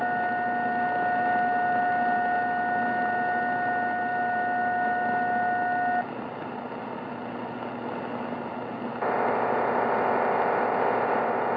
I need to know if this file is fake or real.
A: real